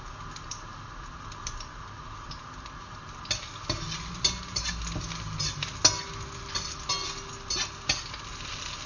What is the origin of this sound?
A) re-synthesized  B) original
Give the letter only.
B